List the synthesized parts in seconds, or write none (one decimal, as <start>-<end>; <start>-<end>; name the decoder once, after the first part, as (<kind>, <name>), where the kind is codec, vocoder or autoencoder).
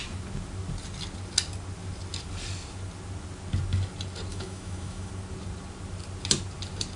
4.3-5.1 (autoencoder, DAC-VAE)